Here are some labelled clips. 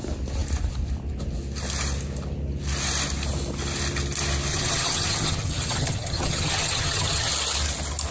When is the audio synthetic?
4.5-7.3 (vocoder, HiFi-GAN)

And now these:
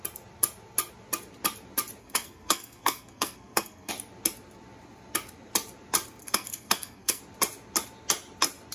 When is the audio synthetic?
2.0-3.9 (codec, SNAC); 6.2-7.2